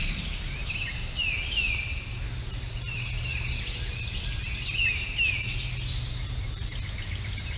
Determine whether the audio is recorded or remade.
recorded